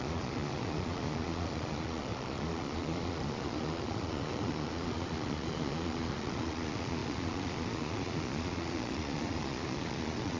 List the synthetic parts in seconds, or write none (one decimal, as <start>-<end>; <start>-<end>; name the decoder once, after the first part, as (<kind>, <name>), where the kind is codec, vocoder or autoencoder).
0.0-10.4 (vocoder, Vocos)